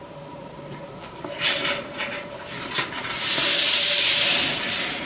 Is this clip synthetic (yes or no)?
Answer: no